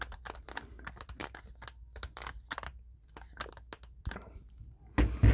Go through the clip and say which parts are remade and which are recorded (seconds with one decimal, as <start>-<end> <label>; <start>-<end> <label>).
0.0-5.3 recorded